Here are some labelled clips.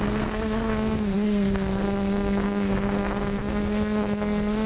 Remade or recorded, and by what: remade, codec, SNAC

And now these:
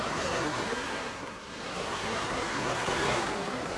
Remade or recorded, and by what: remade, codec, SNAC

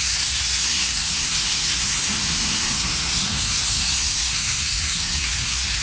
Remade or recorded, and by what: remade, codec, SNAC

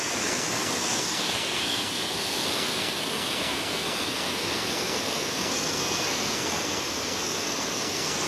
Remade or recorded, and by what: remade, codec, SNAC